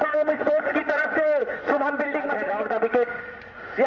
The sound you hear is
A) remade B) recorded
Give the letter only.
A